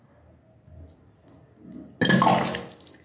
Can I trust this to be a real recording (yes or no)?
yes